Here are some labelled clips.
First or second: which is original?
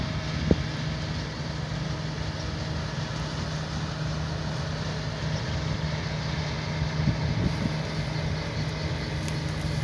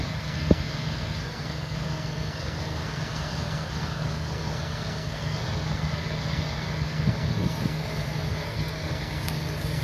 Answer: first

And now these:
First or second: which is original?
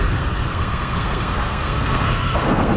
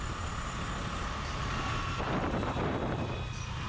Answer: second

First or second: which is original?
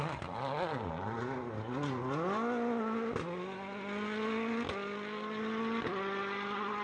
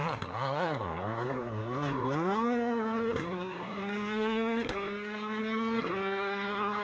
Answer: first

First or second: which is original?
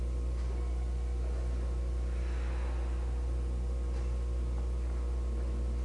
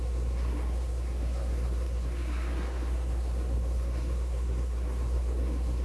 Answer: first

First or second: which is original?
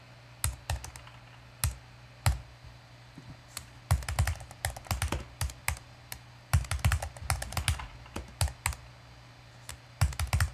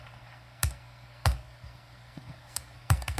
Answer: first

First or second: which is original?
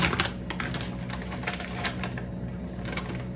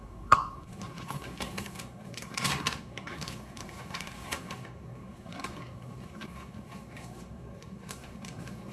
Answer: first